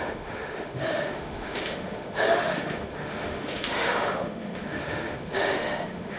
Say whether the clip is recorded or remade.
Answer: remade